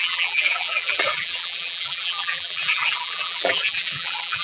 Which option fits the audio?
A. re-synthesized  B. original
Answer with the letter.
A